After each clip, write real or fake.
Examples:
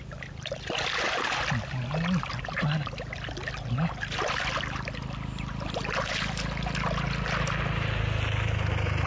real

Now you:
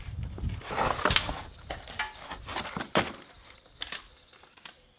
real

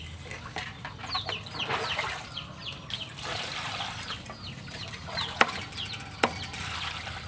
real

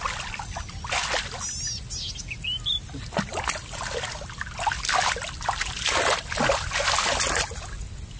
real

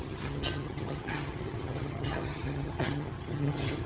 fake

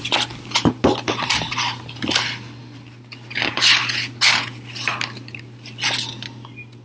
real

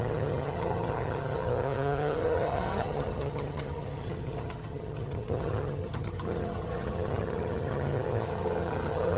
fake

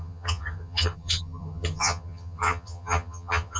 fake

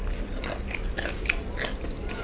real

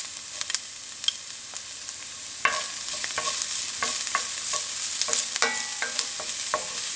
real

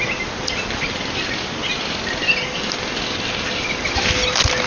real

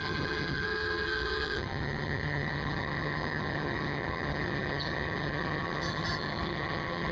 fake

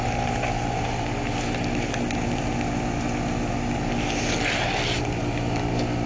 real